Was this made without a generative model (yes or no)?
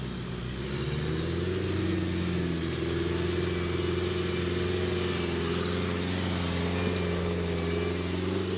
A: yes